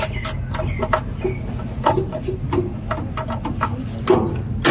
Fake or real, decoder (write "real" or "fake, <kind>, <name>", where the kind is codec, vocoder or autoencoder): real